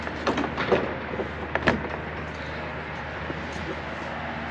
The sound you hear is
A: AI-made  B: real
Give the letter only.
B